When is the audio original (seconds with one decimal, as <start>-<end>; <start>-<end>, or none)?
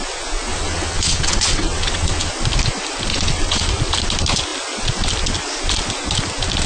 0.0-0.5; 2.3-3.1; 3.7-6.7